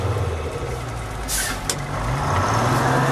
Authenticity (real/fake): real